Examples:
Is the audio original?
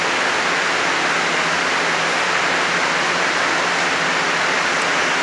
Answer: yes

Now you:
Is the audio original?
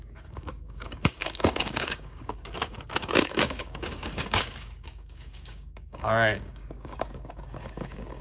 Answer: no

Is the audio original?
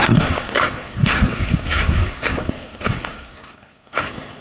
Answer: no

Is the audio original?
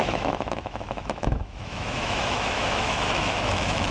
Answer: no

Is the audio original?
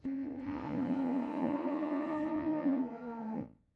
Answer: no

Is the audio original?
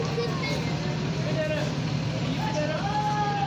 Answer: yes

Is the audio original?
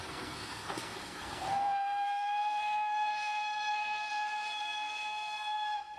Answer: no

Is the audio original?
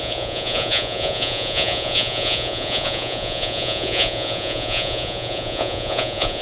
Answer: no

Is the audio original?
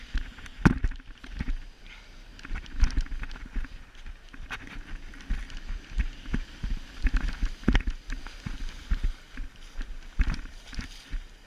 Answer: yes